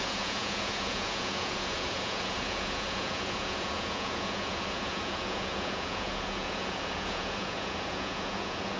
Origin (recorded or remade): remade